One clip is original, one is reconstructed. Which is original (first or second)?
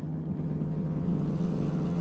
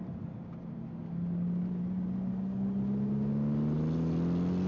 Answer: second